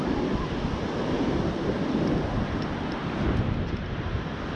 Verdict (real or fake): real